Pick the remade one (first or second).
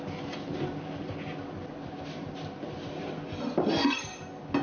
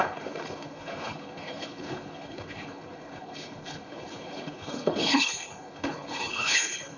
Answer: second